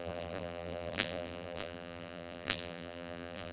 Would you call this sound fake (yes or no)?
yes